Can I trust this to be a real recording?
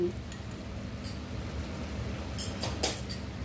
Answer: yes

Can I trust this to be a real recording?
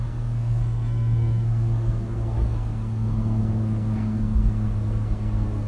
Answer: no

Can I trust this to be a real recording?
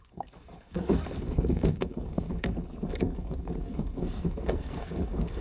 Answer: no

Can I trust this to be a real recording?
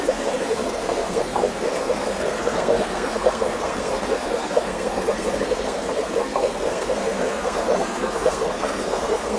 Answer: no